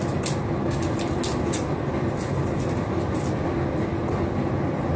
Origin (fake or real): real